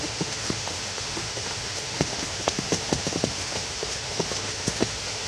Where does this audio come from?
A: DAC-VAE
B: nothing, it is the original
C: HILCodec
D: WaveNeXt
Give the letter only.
A